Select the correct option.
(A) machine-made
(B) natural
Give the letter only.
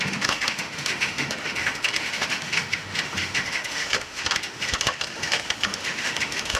A